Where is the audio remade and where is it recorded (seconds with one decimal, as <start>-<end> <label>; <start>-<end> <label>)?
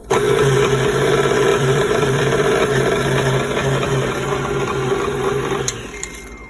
0.0-1.5 recorded; 1.5-2.6 remade; 2.6-3.9 recorded; 3.9-4.4 remade; 4.4-6.5 recorded